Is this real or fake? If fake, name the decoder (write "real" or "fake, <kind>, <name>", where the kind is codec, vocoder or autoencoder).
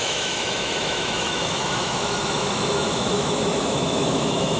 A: fake, autoencoder, DAC-VAE